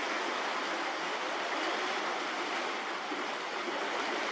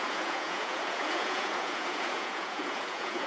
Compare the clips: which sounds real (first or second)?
first